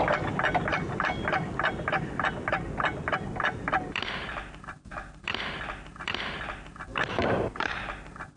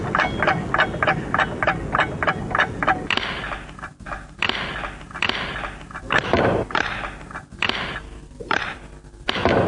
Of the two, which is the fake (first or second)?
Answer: first